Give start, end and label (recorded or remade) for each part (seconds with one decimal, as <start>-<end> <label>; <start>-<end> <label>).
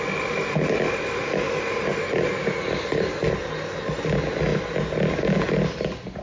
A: 0.0-6.2 recorded